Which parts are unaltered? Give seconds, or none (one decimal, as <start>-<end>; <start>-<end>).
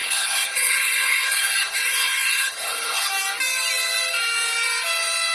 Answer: 3.1-5.3